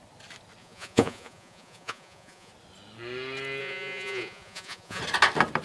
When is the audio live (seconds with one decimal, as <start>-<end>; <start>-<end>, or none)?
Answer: 0.0-0.6; 2.5-3.6; 5.0-5.6